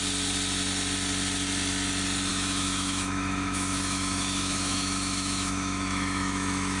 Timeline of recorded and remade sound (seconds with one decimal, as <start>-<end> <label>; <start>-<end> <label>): 0.0-2.3 recorded; 2.3-6.8 remade